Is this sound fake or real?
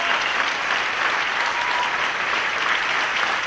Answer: real